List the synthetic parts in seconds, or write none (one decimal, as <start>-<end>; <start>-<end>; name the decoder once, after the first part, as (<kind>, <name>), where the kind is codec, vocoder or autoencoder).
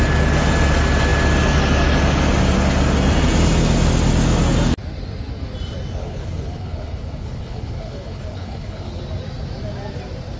6.0-9.0 (codec, HILCodec)